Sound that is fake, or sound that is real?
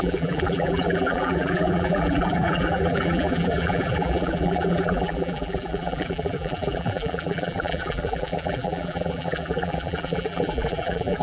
fake